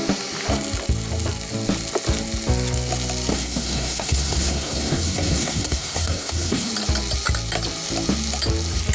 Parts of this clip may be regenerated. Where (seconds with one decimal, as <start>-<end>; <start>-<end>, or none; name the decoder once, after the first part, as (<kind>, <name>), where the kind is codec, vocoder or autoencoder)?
3.3-6.7 (codec, SNAC)